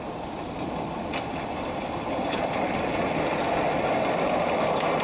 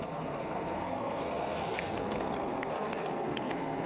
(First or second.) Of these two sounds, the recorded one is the first